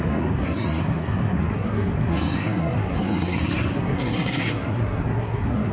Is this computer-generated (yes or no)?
yes